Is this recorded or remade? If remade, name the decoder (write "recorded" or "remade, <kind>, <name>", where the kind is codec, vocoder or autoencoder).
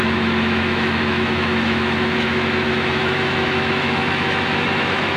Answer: remade, autoencoder, DAC-VAE